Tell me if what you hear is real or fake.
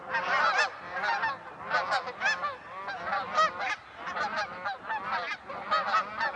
real